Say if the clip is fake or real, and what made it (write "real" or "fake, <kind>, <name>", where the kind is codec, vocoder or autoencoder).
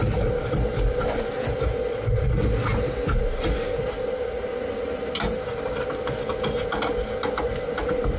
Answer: real